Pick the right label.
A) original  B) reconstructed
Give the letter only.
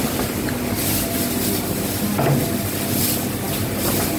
A